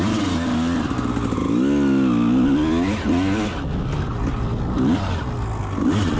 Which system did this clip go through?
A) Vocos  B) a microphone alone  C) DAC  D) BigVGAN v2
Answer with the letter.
B